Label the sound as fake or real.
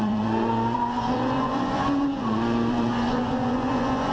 fake